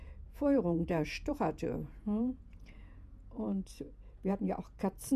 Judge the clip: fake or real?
fake